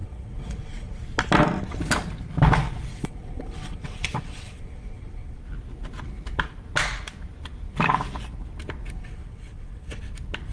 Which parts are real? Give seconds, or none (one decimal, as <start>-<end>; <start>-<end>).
1.0-2.9; 5.4-9.0; 10.0-10.5